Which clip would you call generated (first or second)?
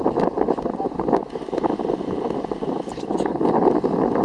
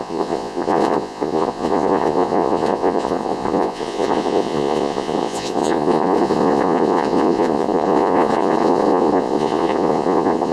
second